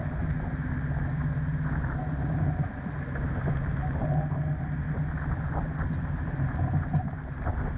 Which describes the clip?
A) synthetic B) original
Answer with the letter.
B